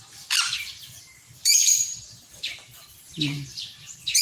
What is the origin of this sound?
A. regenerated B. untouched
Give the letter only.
A